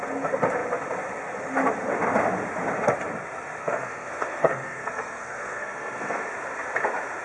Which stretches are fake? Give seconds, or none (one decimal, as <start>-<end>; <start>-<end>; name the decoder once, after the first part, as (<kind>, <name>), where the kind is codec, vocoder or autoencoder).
3.6-6.3 (codec, SNAC)